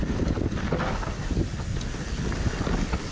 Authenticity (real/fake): real